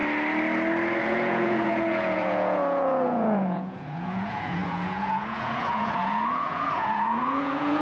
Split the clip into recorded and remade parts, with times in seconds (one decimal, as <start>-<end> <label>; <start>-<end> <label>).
0.0-1.0 recorded; 1.0-7.8 remade